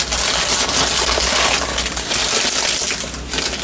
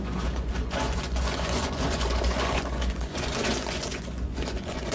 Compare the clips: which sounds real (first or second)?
first